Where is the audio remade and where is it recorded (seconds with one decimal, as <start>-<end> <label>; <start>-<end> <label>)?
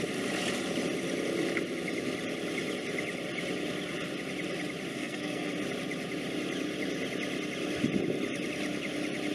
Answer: 0.0-4.9 recorded; 4.9-5.5 remade; 5.5-9.3 recorded